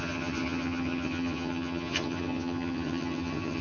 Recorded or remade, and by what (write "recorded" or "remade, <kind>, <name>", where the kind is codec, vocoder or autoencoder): remade, vocoder, HiFi-GAN